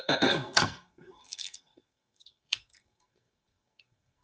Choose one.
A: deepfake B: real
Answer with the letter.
A